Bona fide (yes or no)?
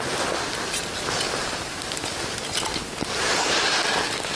yes